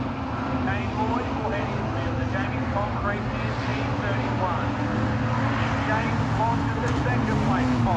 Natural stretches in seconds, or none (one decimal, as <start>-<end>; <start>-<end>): 0.0-8.0